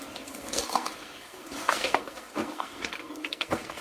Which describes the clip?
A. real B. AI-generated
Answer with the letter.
B